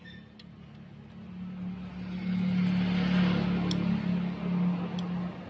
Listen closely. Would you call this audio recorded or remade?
recorded